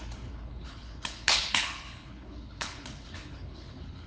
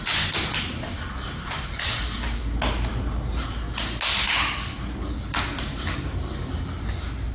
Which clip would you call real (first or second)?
second